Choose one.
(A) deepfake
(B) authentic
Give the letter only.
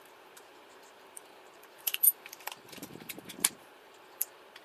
A